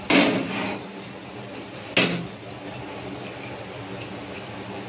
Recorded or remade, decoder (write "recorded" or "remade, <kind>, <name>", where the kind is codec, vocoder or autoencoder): recorded